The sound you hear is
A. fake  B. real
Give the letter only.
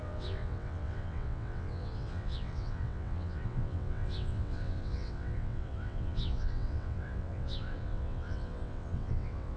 A